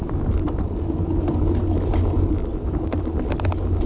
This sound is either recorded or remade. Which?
recorded